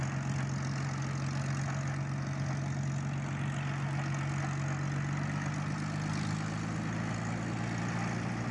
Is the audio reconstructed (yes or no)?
no